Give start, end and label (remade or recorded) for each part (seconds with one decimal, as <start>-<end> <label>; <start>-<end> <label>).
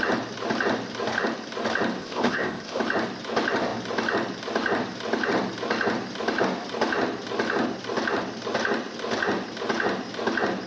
0.0-2.0 recorded; 2.0-2.8 remade; 2.8-10.7 recorded